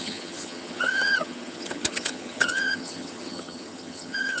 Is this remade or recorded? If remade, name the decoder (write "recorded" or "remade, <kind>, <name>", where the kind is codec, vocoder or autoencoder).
remade, vocoder, HiFi-GAN